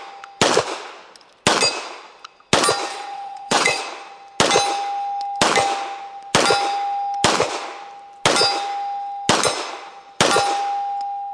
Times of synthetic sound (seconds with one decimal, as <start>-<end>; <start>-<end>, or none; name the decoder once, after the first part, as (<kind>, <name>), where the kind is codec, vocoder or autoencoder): 2.9-3.8 (vocoder, WaveNeXt)